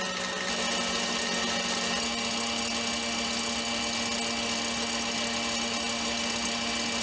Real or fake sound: real